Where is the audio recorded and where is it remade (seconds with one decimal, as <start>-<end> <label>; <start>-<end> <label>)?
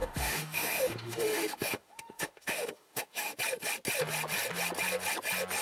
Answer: 0.0-3.4 remade; 3.4-5.6 recorded